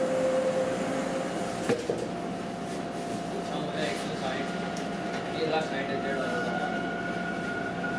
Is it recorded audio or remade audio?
recorded